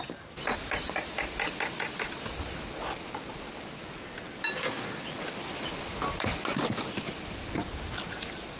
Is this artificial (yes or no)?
no